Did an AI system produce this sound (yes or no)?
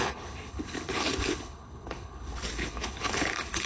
yes